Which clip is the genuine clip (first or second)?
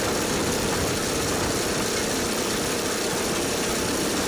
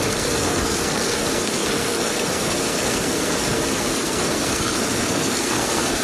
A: first